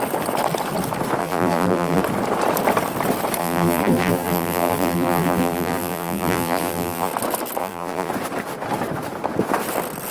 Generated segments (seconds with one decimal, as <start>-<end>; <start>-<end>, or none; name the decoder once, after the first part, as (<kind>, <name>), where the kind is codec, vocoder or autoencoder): 1.2-2.0 (vocoder, BigVGAN v2); 3.4-7.1; 7.6-8.1